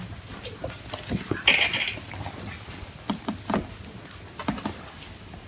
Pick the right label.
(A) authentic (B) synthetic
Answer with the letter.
A